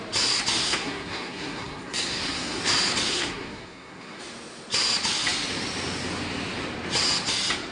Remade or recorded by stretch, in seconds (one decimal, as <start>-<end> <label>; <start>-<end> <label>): 0.0-0.6 recorded; 0.6-2.6 remade; 2.6-3.1 recorded; 3.1-4.2 remade; 4.2-7.7 recorded